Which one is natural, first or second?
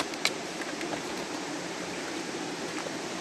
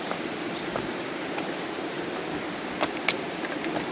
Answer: second